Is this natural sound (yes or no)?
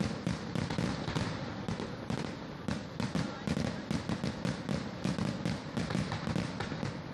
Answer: yes